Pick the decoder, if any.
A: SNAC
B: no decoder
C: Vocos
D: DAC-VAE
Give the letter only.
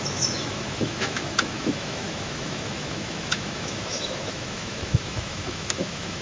D